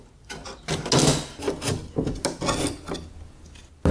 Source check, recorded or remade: recorded